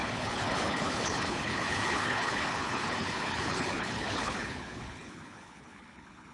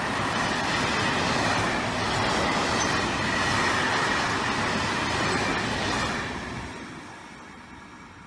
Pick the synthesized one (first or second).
first